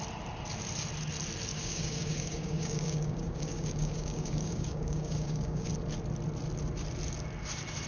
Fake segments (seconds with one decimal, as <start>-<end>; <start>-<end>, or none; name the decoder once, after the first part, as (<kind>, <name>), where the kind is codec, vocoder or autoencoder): 1.5-5.7 (codec, DAC)